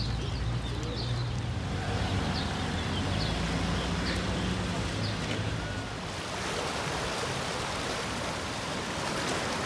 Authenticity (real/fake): real